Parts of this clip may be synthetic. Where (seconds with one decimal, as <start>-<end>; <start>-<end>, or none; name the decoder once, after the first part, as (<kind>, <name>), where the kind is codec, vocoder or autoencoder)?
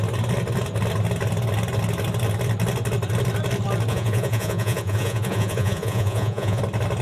3.9-6.6 (vocoder, Vocos)